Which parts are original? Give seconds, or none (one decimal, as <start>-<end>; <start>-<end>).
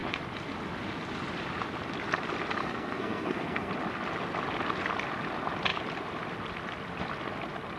0.0-2.6; 3.7-7.8